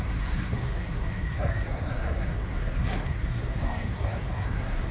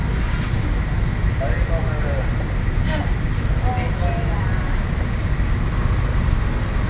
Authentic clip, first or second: second